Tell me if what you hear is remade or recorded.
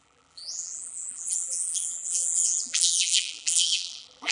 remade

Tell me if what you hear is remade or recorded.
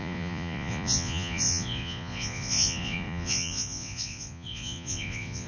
remade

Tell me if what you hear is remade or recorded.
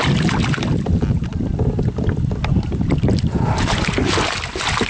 recorded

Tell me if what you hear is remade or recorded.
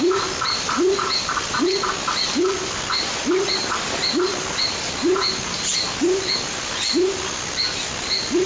recorded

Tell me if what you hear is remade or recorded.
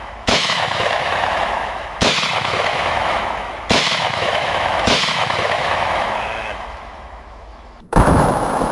remade